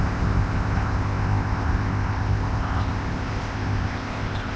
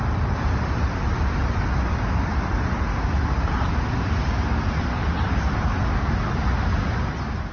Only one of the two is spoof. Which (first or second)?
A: first